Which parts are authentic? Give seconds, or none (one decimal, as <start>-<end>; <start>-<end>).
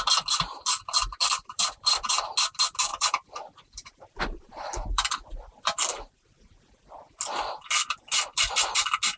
0.0-1.2; 2.1-2.9; 6.9-9.2